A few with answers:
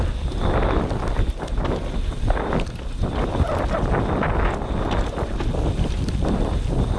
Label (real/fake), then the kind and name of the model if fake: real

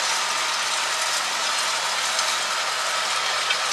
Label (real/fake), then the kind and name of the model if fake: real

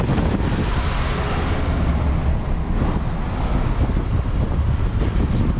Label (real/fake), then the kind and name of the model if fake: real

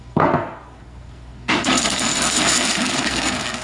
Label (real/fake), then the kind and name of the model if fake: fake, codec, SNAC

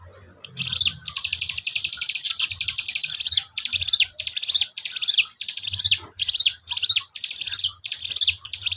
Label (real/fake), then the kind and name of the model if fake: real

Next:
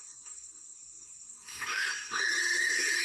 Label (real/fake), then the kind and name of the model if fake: fake, codec, SNAC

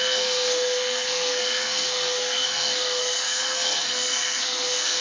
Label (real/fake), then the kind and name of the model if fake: fake, codec, SNAC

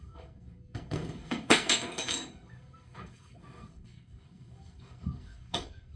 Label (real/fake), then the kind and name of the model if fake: fake, codec, SNAC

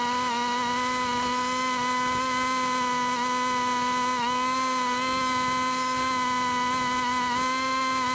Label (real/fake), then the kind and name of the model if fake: real